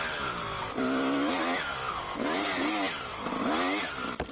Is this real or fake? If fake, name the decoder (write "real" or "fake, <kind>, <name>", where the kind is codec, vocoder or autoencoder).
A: real